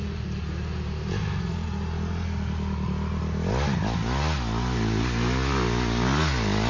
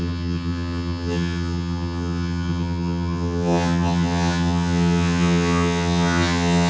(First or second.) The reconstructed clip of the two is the second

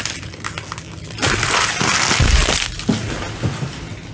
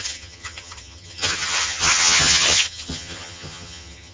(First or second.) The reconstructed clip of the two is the second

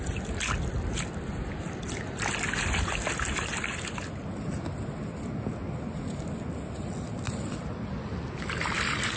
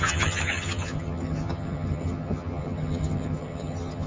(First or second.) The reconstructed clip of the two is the second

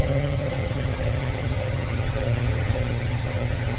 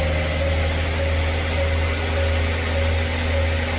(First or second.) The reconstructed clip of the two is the first